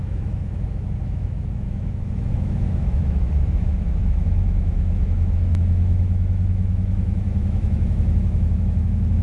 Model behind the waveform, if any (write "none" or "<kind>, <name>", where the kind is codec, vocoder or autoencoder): autoencoder, DAC-VAE